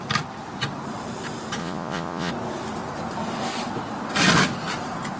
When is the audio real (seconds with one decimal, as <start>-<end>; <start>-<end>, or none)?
0.0-1.6; 2.3-5.2